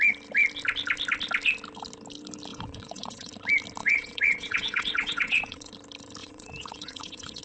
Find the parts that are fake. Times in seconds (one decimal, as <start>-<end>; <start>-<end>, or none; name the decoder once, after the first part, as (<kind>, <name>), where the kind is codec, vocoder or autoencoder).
2.5-3.3 (vocoder, WaveNeXt); 3.8-5.7; 6.2-7.4